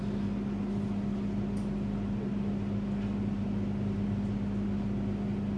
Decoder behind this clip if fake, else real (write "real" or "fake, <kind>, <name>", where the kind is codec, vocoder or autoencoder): real